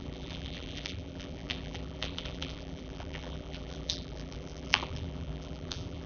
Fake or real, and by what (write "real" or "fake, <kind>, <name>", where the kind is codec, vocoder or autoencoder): fake, vocoder, BigVGAN v2